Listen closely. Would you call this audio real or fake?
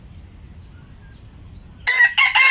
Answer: real